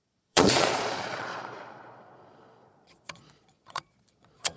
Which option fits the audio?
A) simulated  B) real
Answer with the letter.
A